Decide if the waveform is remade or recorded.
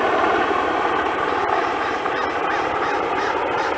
remade